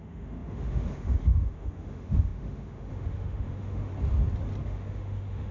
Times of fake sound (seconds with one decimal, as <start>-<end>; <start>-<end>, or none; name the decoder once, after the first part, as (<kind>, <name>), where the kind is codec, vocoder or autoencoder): 0.0-3.9 (autoencoder, DAC-VAE); 4.6-5.5